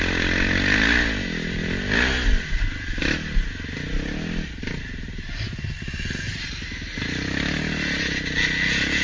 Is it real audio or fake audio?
real